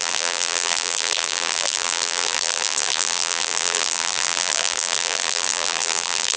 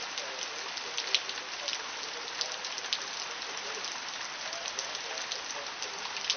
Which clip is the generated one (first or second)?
first